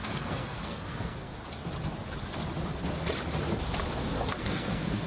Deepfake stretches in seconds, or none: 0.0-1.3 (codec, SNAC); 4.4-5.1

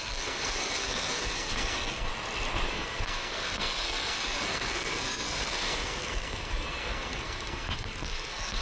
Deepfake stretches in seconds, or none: 0.0-2.1 (codec, SNAC); 2.7-8.6

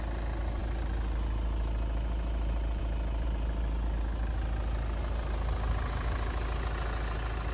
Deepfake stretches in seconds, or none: none

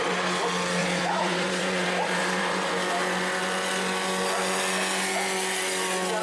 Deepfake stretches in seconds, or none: 0.8-2.7 (vocoder, Vocos)